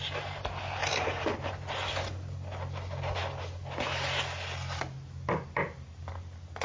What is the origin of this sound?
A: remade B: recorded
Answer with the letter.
B